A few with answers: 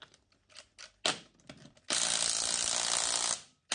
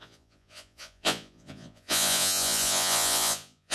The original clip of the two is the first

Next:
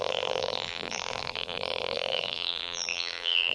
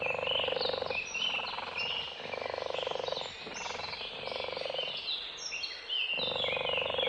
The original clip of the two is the second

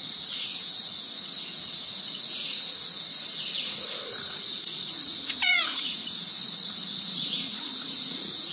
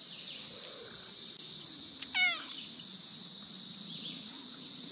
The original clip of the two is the second